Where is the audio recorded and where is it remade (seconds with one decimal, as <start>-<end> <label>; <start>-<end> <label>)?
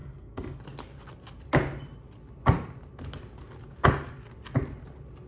0.0-0.6 remade; 0.6-5.3 recorded